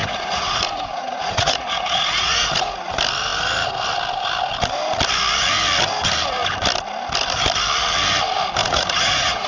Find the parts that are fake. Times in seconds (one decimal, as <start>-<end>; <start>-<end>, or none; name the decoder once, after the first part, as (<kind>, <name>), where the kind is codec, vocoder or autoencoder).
0.0-2.9 (vocoder, Vocos); 8.6-9.5